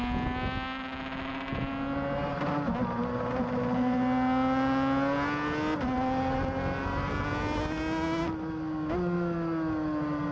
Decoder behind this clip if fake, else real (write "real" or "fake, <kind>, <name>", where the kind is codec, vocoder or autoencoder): real